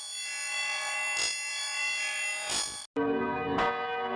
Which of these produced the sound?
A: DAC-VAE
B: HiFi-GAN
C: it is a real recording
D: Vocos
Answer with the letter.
C